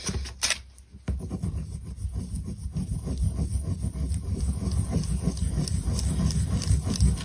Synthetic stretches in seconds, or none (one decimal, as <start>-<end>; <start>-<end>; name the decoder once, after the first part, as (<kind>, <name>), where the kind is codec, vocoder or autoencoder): none